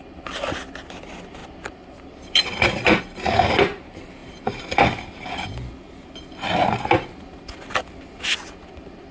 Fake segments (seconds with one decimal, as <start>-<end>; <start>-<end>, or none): none